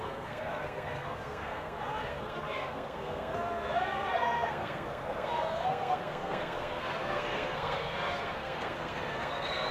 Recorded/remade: remade